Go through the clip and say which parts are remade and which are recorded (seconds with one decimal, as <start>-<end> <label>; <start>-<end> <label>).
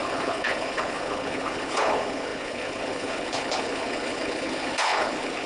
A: 0.0-5.5 remade